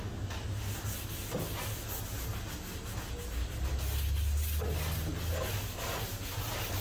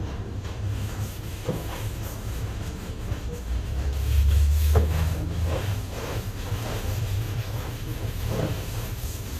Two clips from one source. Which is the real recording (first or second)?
first